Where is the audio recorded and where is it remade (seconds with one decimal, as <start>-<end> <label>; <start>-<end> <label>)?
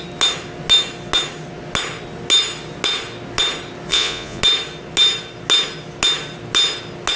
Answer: 0.0-3.9 recorded; 3.9-4.4 remade; 4.4-7.2 recorded